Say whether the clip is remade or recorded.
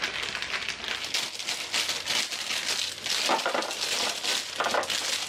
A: recorded